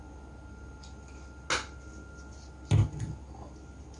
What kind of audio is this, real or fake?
real